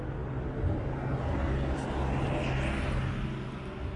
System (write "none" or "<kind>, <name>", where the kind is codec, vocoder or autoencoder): none